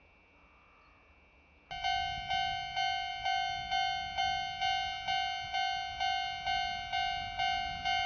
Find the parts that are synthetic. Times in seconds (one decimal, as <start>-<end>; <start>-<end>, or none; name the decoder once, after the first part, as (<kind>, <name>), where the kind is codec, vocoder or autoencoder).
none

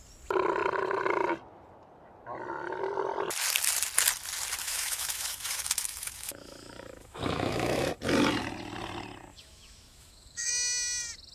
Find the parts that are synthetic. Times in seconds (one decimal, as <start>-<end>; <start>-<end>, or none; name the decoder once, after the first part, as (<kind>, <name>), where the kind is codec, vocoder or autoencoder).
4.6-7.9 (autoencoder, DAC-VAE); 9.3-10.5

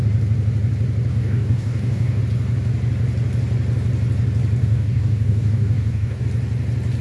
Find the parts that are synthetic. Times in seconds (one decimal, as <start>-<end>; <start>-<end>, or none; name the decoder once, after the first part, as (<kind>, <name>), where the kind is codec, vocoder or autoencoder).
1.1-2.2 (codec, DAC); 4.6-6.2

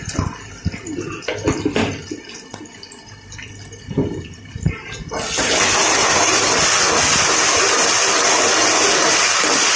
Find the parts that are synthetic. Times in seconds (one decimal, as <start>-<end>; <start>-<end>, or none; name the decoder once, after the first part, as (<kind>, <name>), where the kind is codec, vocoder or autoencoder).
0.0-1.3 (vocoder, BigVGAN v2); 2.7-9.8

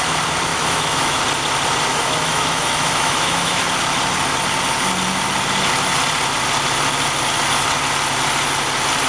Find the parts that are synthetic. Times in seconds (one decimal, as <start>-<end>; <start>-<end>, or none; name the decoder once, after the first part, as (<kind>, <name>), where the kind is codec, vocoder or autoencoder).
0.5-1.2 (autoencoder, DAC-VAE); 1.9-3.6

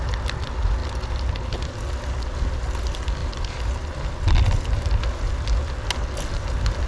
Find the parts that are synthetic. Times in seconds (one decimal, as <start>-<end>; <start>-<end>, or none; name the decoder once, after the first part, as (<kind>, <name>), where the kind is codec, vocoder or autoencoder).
0.8-1.3 (vocoder, BigVGAN v2); 3.2-4.8